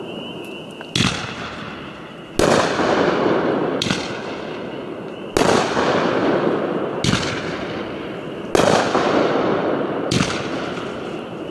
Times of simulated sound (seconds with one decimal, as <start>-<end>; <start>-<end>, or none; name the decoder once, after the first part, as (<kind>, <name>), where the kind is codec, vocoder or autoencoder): none